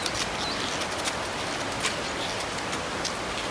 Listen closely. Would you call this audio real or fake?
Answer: real